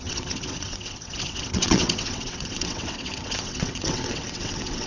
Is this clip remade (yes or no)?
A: yes